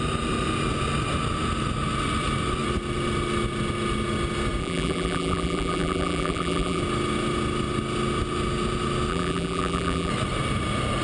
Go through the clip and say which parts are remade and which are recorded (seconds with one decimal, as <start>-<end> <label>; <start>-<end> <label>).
0.0-4.6 recorded; 4.6-6.8 remade; 6.8-9.1 recorded; 9.1-10.1 remade; 10.1-11.0 recorded